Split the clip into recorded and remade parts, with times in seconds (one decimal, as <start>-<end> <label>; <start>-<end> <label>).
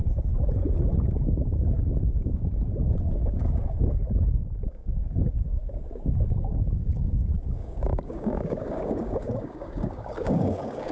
0.0-1.1 recorded; 1.1-10.9 remade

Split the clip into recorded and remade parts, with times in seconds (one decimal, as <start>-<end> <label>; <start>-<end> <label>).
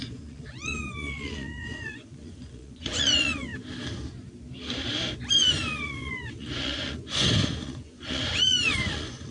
0.0-3.5 remade; 3.5-5.3 recorded; 5.3-9.3 remade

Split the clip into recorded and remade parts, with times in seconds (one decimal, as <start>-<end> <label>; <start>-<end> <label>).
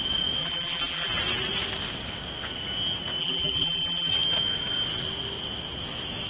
0.0-0.4 recorded; 0.4-1.1 remade; 1.1-3.2 recorded; 3.2-4.1 remade; 4.1-6.3 recorded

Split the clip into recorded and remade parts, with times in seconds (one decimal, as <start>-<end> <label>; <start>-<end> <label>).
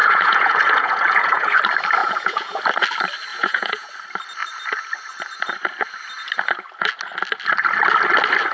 0.0-1.6 remade; 1.6-2.0 recorded; 2.0-2.6 remade; 2.6-3.3 recorded; 3.3-3.9 remade; 3.9-8.5 recorded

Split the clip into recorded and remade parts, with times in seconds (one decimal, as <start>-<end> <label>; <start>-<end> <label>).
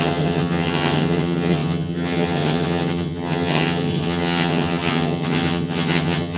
0.0-6.4 remade